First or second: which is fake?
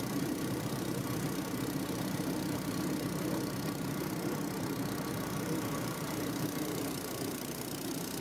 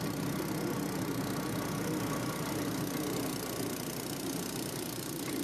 first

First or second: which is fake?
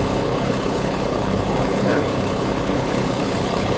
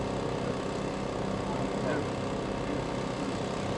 first